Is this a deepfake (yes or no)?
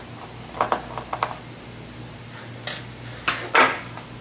no